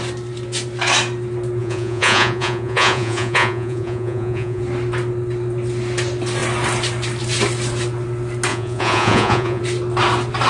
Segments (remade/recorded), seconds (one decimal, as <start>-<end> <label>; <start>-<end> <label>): 0.0-1.6 recorded; 1.6-4.6 remade; 4.6-8.5 recorded; 8.5-9.6 remade; 9.6-10.5 recorded